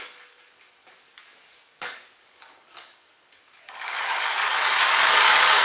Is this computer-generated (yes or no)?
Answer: yes